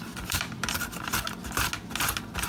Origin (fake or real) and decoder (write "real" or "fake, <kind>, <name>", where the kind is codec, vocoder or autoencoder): real